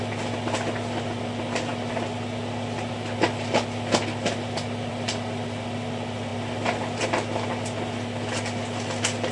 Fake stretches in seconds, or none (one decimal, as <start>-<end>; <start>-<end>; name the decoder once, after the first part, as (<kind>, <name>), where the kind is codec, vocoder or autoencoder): none